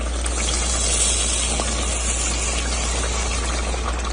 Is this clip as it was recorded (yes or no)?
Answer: yes